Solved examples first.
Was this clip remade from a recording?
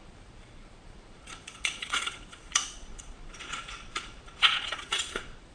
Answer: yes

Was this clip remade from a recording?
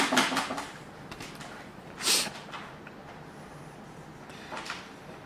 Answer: no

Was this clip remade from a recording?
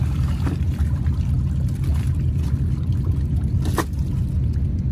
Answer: no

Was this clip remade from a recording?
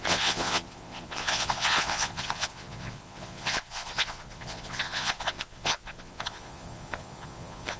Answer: yes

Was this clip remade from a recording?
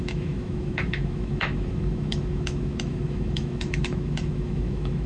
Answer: yes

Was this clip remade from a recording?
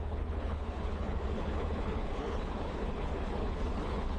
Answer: yes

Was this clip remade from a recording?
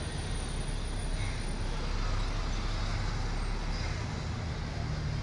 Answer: no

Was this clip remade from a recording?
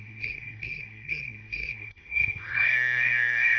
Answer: yes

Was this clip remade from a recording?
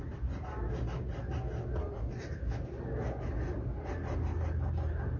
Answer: no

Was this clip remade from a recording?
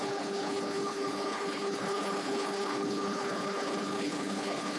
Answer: yes